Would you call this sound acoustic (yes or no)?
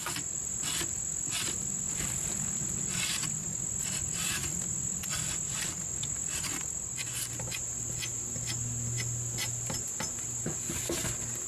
yes